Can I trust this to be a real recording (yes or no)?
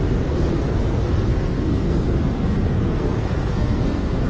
no